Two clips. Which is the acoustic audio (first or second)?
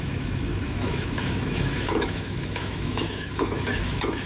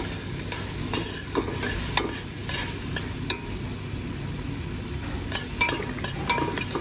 second